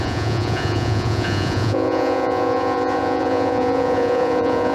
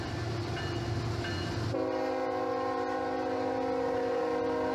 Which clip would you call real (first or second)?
second